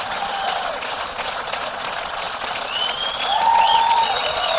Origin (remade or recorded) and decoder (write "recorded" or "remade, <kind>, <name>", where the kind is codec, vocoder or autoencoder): remade, vocoder, Vocos